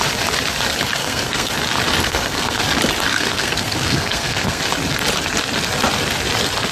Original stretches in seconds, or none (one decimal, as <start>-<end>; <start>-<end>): 0.0-1.0; 1.5-2.0; 2.6-3.1; 4.6-6.7